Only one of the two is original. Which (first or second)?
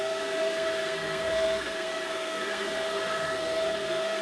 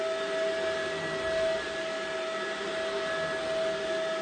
second